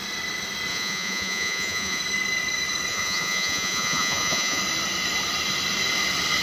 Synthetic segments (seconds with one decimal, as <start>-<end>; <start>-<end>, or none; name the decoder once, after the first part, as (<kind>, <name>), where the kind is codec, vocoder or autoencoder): 0.7-2.0 (vocoder, Vocos); 2.9-4.6